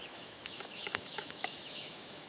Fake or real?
fake